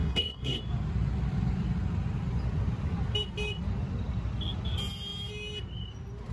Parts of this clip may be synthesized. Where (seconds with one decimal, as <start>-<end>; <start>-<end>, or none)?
0.0-0.6